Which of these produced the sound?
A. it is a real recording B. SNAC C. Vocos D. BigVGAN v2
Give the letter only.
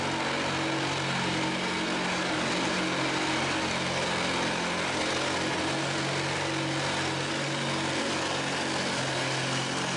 A